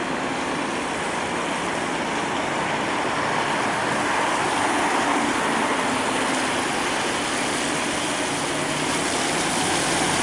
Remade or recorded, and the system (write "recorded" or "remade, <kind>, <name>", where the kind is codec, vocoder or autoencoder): recorded